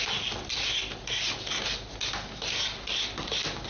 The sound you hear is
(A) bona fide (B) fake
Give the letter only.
A